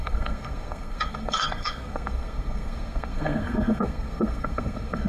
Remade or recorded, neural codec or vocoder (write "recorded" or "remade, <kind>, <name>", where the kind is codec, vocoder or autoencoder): remade, codec, SNAC